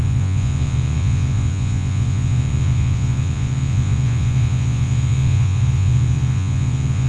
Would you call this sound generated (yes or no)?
yes